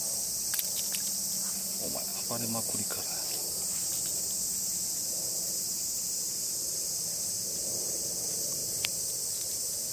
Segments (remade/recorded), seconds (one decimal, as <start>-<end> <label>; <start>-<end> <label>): 0.0-9.9 recorded